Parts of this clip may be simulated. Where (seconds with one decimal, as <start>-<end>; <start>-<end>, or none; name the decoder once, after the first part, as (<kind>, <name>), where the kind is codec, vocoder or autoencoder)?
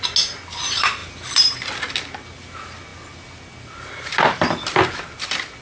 none